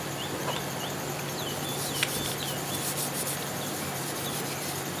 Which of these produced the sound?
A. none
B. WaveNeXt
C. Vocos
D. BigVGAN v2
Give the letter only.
D